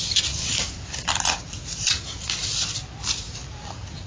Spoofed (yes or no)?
no